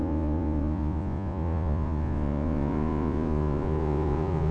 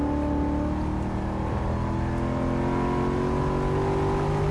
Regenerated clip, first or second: first